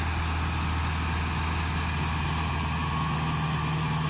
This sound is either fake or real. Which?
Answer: real